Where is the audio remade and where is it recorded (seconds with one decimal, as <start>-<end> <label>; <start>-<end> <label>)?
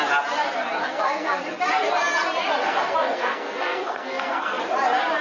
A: 0.0-0.8 recorded; 0.8-1.4 remade; 1.4-2.6 recorded; 2.6-4.6 remade; 4.6-5.2 recorded